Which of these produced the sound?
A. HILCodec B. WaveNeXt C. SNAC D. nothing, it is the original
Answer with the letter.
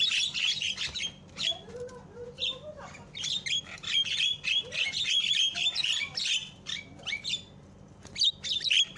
D